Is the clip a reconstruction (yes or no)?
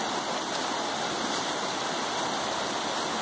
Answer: no